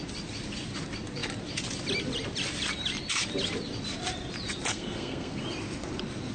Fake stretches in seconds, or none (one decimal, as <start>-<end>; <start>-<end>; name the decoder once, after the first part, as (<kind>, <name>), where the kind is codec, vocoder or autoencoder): 4.7-5.4 (codec, SNAC)